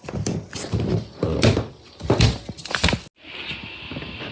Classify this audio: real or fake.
real